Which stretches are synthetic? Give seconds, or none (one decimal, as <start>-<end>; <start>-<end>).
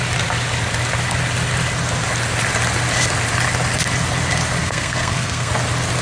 4.6-5.5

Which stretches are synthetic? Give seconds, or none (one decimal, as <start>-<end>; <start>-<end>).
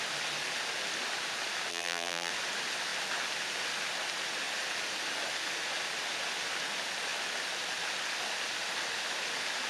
1.7-2.3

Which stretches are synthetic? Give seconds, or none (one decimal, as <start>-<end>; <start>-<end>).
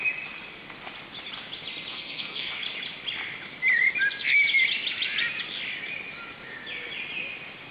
1.9-2.5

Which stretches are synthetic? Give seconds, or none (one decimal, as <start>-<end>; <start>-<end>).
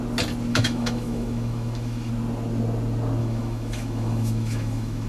0.5-2.1; 3.2-5.1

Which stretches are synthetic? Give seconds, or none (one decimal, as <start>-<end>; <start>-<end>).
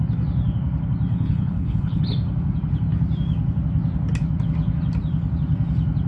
1.1-2.0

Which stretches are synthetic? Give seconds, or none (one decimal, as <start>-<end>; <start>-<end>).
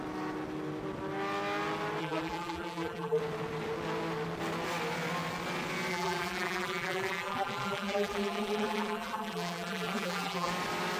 2.0-3.2; 5.9-10.5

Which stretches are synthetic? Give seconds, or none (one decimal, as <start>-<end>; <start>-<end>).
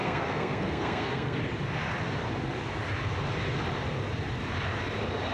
0.0-1.4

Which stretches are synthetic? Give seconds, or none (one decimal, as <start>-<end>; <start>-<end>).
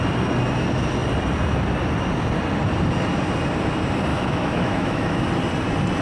4.1-5.2